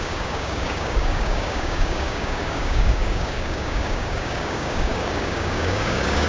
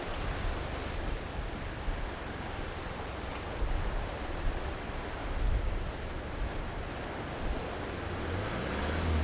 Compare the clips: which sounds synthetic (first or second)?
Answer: first